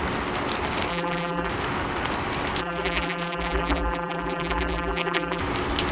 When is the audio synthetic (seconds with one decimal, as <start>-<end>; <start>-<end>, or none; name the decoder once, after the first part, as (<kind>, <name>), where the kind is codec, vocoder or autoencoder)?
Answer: 0.9-1.5 (vocoder, BigVGAN v2); 2.6-5.4